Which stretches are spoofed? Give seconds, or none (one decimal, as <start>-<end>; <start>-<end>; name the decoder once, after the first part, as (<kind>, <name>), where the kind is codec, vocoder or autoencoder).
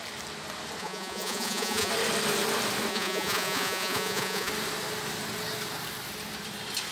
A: 0.8-1.9 (vocoder, Vocos); 2.9-4.5